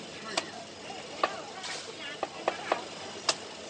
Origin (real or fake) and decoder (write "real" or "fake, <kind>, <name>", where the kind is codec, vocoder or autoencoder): real